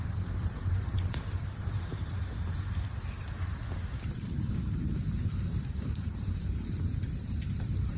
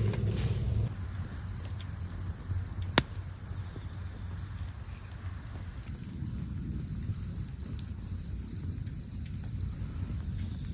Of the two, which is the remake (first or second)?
first